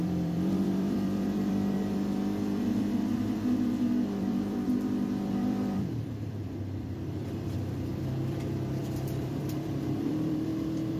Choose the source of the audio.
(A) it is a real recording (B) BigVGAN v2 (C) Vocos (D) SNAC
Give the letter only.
B